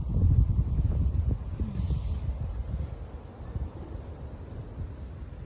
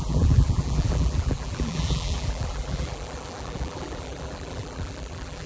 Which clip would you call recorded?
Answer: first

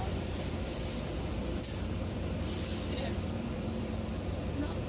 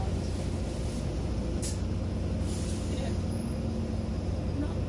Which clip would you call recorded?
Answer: second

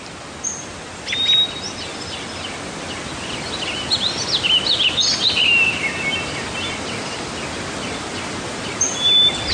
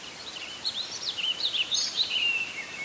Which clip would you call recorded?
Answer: first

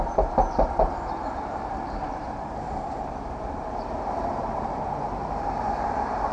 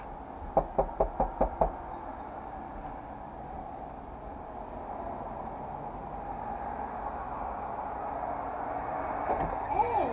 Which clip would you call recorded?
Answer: second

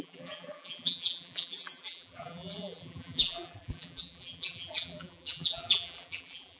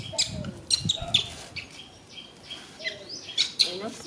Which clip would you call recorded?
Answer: second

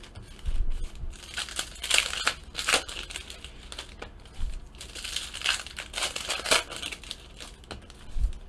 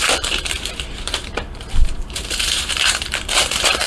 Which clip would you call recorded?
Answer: first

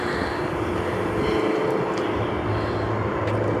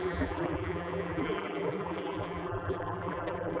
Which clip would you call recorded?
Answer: first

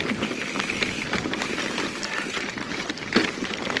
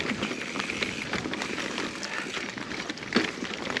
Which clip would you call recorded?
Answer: second